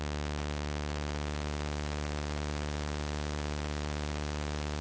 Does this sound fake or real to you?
real